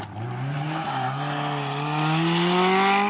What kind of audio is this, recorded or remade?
recorded